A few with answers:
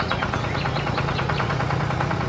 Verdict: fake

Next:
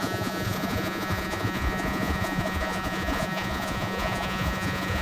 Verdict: fake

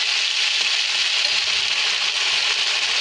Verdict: real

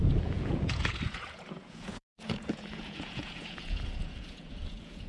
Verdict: fake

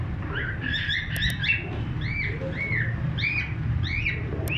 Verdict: real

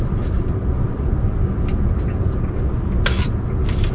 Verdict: real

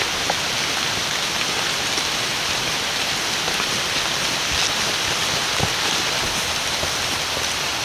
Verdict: real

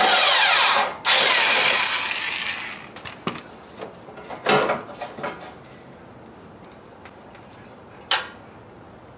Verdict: real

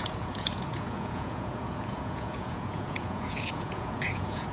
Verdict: fake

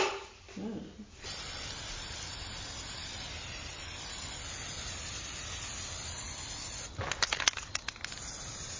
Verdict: real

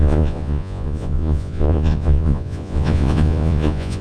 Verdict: fake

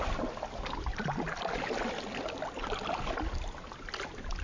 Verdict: real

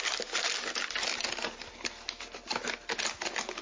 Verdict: real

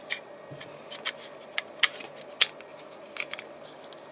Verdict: real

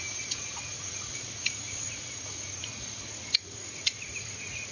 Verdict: fake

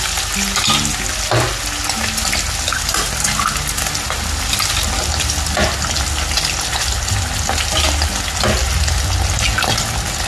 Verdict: real